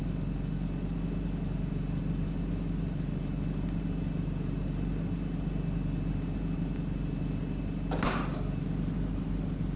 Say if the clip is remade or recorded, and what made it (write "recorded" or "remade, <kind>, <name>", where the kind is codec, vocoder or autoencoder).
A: recorded